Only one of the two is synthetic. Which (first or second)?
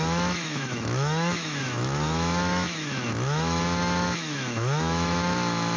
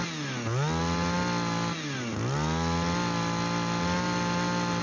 first